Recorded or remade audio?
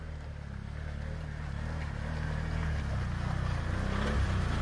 recorded